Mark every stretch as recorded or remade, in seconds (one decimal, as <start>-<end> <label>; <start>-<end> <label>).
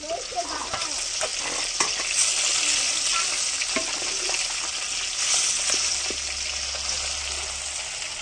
0.0-8.2 recorded